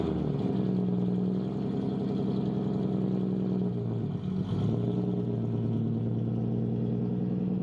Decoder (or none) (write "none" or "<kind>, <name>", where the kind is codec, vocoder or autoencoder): none